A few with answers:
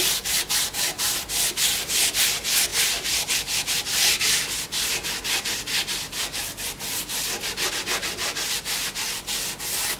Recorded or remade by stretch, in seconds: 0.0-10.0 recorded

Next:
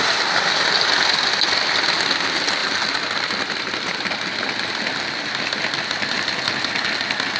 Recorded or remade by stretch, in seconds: 0.0-7.4 recorded

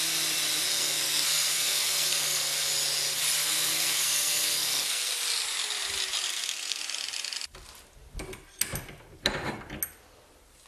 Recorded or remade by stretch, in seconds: 0.0-0.7 recorded; 0.7-2.7 remade; 2.7-3.4 recorded; 3.4-5.1 remade; 5.1-6.3 recorded; 6.3-6.8 remade; 6.8-10.7 recorded

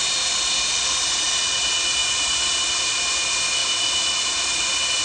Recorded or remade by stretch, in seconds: 0.0-2.0 recorded; 2.0-2.6 remade; 2.6-5.0 recorded